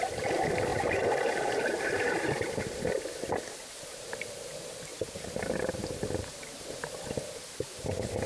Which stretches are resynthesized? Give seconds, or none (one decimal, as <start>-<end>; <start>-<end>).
0.7-3.0; 4.9-6.4